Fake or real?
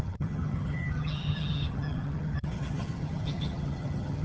fake